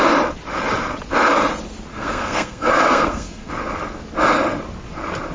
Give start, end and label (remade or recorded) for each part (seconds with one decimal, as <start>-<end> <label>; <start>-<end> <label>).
0.0-1.9 recorded; 1.9-3.5 remade; 3.5-5.3 recorded